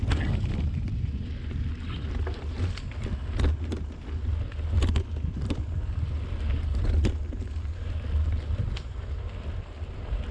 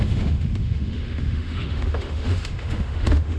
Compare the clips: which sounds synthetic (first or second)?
second